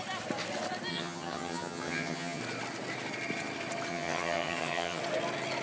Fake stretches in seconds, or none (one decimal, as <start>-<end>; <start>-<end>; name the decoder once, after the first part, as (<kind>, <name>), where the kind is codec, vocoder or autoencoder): 0.9-2.4 (vocoder, HiFi-GAN); 3.9-5.0